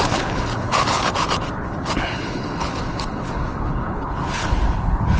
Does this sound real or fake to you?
fake